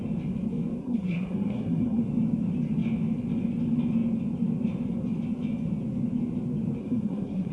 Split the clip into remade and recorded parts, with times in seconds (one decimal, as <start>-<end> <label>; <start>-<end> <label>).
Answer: 0.0-0.8 recorded; 0.8-2.0 remade; 2.0-6.8 recorded; 6.8-7.5 remade